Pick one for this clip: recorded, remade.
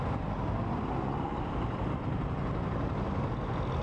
recorded